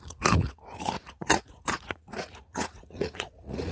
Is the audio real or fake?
fake